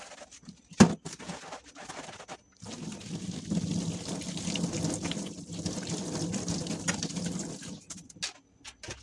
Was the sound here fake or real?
real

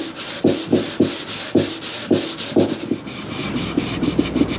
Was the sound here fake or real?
real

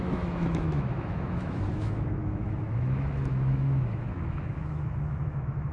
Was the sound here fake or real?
fake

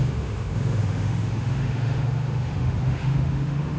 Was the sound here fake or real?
fake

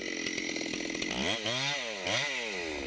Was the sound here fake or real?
real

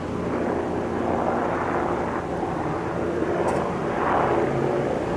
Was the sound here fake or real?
real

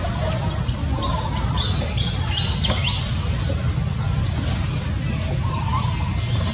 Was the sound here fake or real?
real